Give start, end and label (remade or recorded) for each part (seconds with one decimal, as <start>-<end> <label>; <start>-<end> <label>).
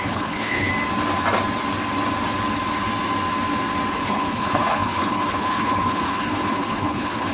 0.0-0.7 remade; 0.7-3.9 recorded; 3.9-7.3 remade